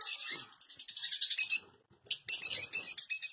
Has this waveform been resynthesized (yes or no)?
no